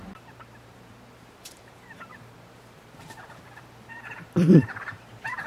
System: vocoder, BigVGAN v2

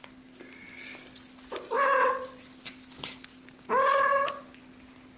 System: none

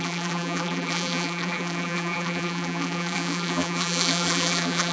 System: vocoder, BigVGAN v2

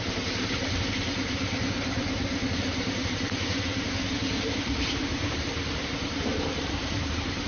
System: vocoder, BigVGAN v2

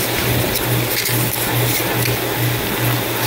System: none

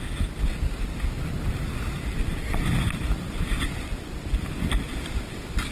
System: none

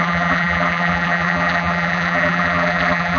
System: vocoder, BigVGAN v2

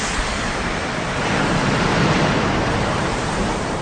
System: vocoder, BigVGAN v2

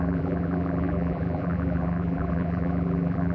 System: vocoder, BigVGAN v2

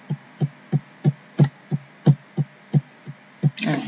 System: none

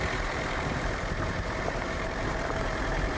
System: vocoder, BigVGAN v2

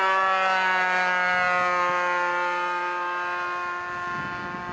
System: none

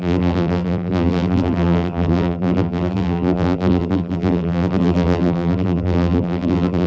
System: vocoder, BigVGAN v2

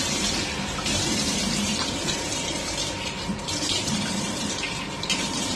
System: vocoder, BigVGAN v2